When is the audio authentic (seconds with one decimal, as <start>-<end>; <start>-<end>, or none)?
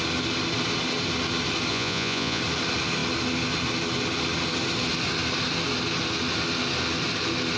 0.0-1.7; 2.4-7.6